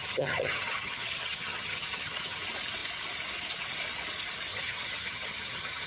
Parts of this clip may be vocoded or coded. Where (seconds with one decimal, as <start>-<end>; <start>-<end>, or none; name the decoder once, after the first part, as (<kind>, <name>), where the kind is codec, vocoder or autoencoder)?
0.0-2.4 (vocoder, HiFi-GAN); 4.5-5.9